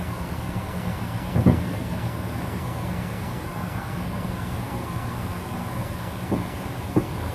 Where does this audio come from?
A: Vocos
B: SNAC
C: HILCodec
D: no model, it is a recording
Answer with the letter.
B